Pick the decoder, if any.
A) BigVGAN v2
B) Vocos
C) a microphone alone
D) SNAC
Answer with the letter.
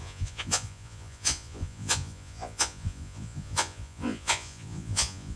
B